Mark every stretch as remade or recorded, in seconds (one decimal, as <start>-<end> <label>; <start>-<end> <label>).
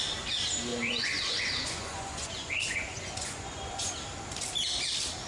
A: 0.0-0.7 recorded; 0.7-3.9 remade; 3.9-5.3 recorded